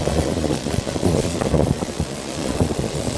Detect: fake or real fake